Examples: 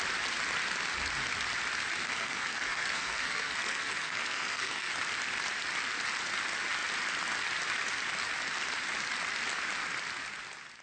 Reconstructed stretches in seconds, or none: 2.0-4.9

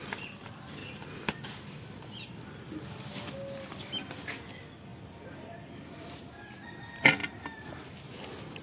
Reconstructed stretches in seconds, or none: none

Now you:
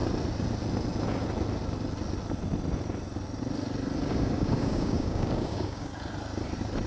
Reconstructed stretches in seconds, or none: 4.1-5.9

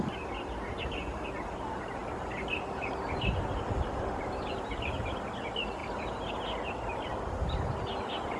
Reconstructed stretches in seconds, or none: 2.0-5.3; 5.8-6.3

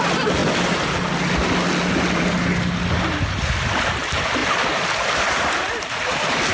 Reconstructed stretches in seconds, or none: none

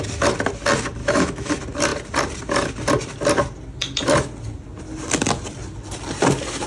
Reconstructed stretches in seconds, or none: 1.0-1.5